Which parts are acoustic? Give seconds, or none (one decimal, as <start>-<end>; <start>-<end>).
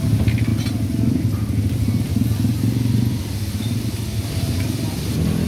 0.0-5.5